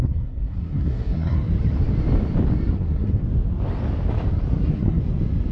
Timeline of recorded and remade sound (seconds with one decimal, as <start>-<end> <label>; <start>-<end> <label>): 0.0-1.5 remade; 1.5-2.7 recorded; 2.7-3.2 remade; 3.2-4.5 recorded; 4.5-5.0 remade; 5.0-5.5 recorded